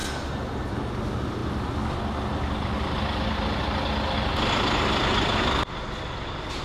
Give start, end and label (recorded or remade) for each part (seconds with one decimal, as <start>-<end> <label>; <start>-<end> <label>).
0.0-6.6 recorded